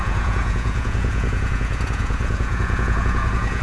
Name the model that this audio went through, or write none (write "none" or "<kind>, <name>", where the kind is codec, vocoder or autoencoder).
vocoder, Vocos